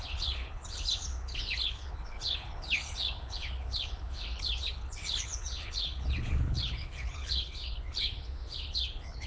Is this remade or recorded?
remade